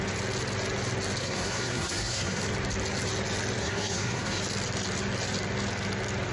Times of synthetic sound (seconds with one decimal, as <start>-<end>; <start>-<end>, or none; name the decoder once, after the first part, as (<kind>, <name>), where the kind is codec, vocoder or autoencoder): 1.2-2.4 (codec, SNAC); 3.6-4.4